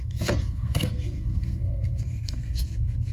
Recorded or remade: remade